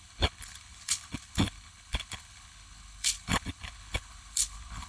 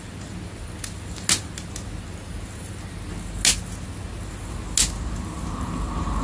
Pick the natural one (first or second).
second